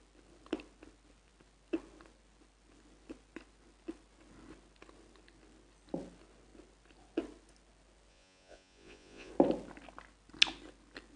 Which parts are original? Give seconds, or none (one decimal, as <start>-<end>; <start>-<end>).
0.0-8.1; 9.3-11.2

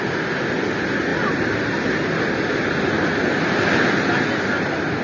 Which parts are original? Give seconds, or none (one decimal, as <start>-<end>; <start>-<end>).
0.0-5.0

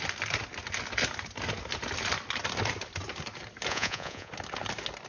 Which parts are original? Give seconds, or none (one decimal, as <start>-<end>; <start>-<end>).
0.0-3.7; 4.3-5.1

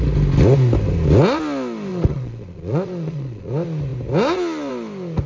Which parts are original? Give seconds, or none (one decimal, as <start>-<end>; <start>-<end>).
0.0-1.9; 3.5-5.3

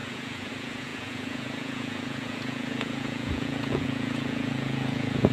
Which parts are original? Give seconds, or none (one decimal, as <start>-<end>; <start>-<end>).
none

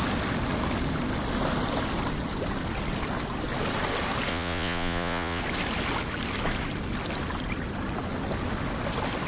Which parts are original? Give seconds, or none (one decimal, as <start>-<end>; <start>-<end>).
0.0-4.3; 5.4-9.3